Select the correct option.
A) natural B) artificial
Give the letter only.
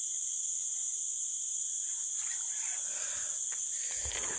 A